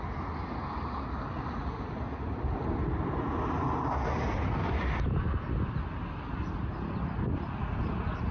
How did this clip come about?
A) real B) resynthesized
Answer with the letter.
A